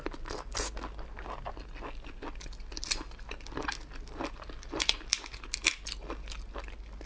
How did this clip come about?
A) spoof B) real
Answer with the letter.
B